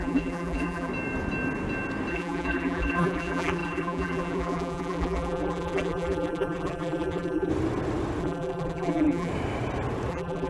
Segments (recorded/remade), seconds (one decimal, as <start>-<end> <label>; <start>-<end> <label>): 0.0-0.9 remade; 0.9-2.1 recorded; 2.1-7.5 remade; 7.5-8.2 recorded; 8.2-9.3 remade; 9.3-10.1 recorded; 10.1-10.5 remade